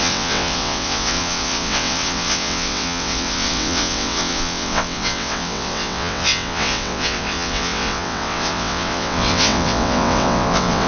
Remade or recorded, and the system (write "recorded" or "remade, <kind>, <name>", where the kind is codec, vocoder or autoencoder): remade, vocoder, WaveNeXt